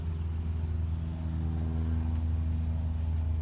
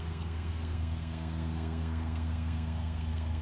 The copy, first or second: second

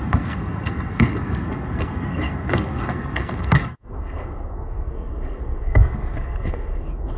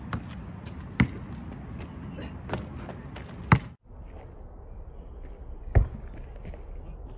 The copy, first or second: first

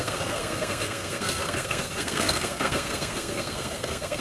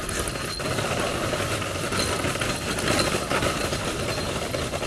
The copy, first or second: first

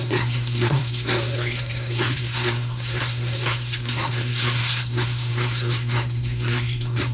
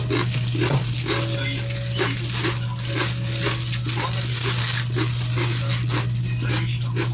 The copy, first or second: first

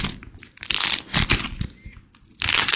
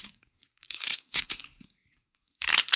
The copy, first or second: second